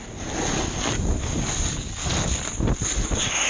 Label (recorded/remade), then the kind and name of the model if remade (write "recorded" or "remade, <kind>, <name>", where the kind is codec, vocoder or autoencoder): recorded